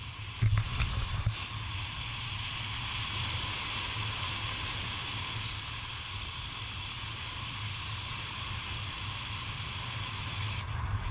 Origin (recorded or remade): recorded